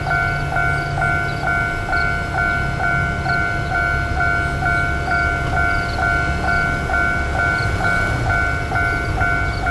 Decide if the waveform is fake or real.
real